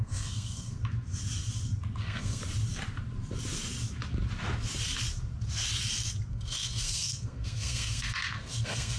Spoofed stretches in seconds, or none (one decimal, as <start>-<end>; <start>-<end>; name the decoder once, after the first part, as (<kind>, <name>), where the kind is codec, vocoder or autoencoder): 0.0-0.8 (codec, SNAC); 2.0-2.4; 6.3-9.0